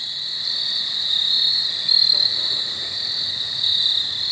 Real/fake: real